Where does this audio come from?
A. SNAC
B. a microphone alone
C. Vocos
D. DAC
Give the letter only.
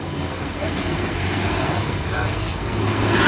A